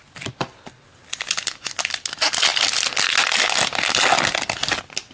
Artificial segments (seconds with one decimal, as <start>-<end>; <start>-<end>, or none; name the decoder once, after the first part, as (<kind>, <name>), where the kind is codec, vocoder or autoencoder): none

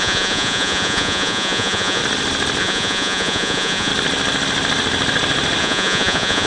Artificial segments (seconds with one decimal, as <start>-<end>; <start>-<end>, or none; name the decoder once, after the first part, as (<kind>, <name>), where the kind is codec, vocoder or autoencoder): 0.0-2.0 (vocoder, Vocos); 2.6-3.9; 5.6-6.5

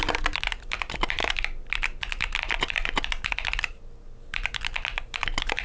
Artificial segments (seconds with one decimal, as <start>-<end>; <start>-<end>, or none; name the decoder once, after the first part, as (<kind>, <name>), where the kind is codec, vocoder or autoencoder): none

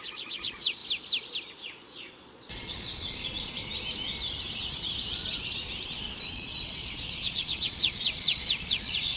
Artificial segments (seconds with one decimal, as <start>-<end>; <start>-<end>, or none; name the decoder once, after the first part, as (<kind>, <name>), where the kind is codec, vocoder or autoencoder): 0.0-0.8 (vocoder, Vocos); 1.4-3.6; 4.5-9.2

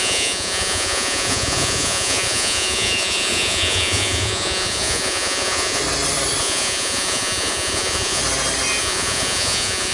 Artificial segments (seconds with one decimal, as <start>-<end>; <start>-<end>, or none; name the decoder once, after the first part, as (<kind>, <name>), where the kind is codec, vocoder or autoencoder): 0.0-5.8 (vocoder, Vocos); 6.4-8.2; 8.8-9.9

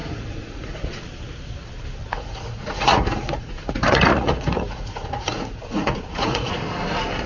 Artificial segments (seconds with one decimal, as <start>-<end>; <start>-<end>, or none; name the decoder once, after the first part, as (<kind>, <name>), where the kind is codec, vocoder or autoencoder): 0.0-1.0 (vocoder, Vocos); 2.1-6.5